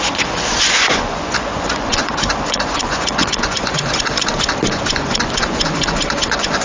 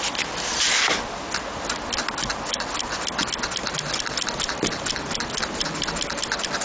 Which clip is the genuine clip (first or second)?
second